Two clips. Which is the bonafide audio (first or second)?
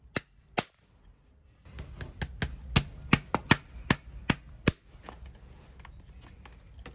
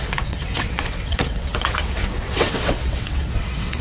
first